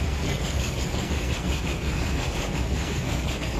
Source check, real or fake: fake